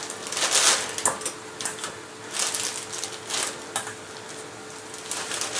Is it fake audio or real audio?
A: real